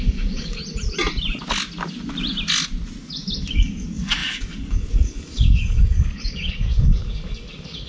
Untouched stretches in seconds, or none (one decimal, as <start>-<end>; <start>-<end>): 0.6-3.0